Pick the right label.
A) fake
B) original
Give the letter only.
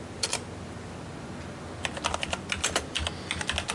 B